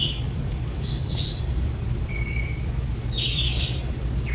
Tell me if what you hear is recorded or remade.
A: remade